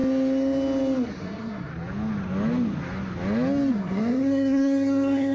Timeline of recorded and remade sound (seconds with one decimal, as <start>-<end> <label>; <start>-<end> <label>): 0.0-1.2 recorded; 1.2-1.7 remade; 1.7-3.7 recorded; 3.7-5.3 remade